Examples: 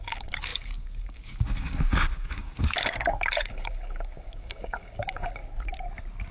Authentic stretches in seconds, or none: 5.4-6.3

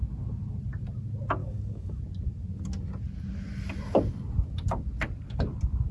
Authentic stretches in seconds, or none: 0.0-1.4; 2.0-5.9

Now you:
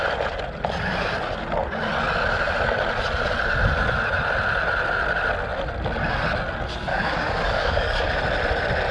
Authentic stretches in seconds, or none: 0.0-6.9; 8.1-8.9